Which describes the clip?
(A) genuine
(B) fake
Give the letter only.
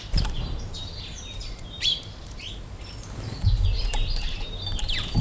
B